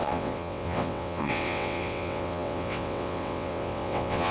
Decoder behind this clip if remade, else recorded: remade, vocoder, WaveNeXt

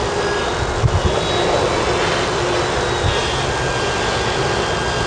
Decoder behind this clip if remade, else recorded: recorded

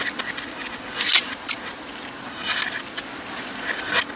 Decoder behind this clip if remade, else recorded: recorded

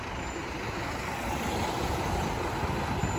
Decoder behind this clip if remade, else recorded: recorded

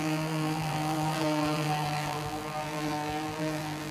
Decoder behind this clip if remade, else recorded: remade, vocoder, BigVGAN v2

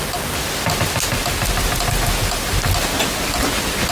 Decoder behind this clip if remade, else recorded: recorded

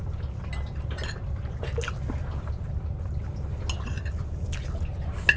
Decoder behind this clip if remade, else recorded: recorded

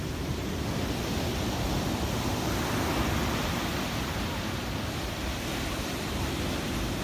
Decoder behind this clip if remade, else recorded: recorded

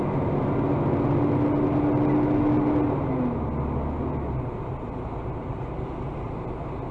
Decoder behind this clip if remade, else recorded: recorded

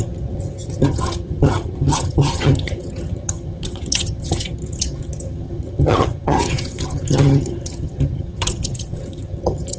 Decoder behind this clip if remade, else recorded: remade, vocoder, HiFi-GAN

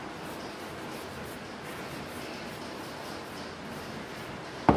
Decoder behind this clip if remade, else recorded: recorded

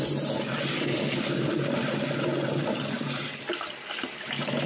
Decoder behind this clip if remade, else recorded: recorded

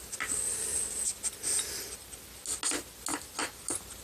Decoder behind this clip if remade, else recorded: recorded